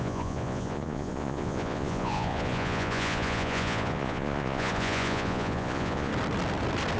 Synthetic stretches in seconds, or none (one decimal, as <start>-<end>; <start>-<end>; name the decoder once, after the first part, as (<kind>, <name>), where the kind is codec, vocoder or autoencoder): 0.0-6.1 (vocoder, Vocos)